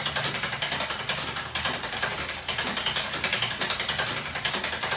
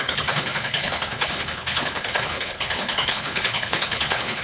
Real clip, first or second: first